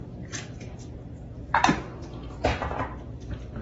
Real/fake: real